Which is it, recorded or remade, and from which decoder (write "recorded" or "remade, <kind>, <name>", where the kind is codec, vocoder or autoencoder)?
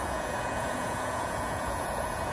remade, vocoder, Vocos